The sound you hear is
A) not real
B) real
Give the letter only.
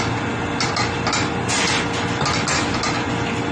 B